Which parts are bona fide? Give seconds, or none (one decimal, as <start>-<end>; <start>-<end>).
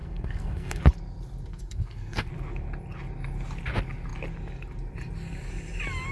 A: 0.8-1.5; 2.3-6.1